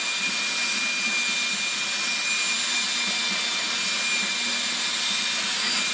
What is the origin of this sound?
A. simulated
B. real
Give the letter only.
B